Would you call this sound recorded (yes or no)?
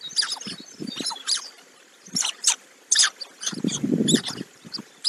yes